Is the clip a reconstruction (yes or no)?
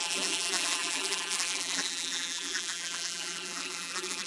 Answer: yes